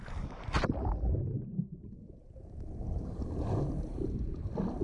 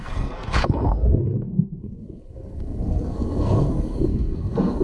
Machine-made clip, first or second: second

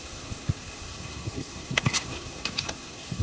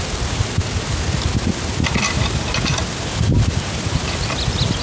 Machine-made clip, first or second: first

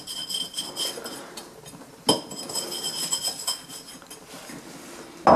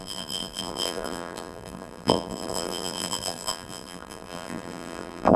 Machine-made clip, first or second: second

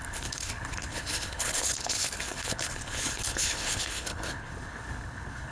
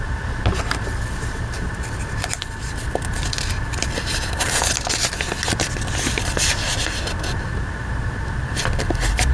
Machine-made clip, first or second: first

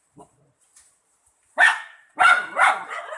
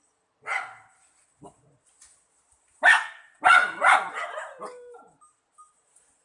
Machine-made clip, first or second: first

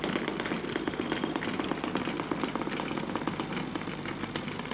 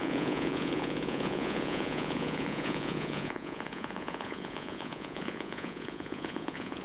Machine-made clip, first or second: second